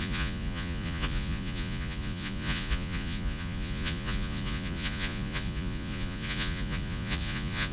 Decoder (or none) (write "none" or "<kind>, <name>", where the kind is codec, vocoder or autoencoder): vocoder, Vocos